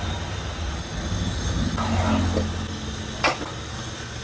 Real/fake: real